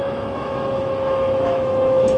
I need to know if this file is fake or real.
fake